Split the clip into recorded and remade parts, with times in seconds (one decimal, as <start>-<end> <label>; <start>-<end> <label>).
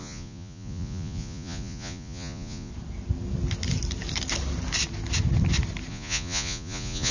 0.0-2.7 remade; 2.7-5.9 recorded; 5.9-7.1 remade